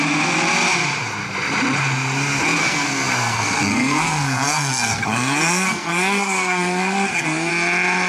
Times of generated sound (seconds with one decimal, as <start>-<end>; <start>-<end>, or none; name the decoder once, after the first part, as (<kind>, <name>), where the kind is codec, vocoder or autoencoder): 2.6-7.5 (codec, SNAC)